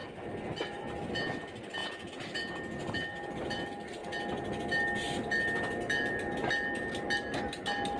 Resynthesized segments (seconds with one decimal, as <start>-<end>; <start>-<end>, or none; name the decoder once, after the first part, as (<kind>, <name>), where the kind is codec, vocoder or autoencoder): none

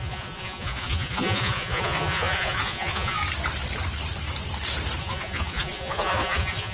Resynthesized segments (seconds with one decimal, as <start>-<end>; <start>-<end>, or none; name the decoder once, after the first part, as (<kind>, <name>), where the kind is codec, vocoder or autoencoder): 0.0-3.2 (vocoder, Vocos); 5.0-6.7

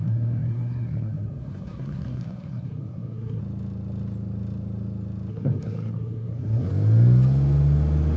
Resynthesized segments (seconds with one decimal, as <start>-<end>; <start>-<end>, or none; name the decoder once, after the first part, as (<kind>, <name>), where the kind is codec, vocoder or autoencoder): 0.0-3.4 (codec, SNAC); 5.3-6.7

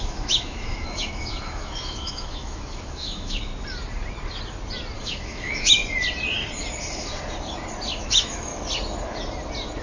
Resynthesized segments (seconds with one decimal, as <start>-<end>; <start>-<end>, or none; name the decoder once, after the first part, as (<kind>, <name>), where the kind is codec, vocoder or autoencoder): 0.0-3.5 (autoencoder, DAC-VAE); 5.0-5.8; 8.0-8.5

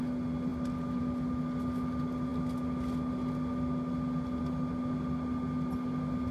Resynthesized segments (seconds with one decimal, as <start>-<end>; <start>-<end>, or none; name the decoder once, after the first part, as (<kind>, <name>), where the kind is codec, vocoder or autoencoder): none